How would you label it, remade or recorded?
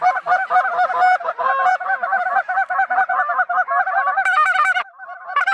recorded